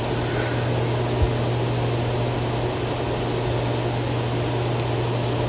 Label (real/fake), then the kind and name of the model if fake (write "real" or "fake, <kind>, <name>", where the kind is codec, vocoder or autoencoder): real